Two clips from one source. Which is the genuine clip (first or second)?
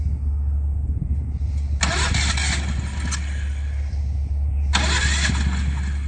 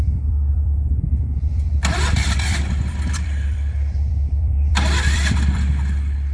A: first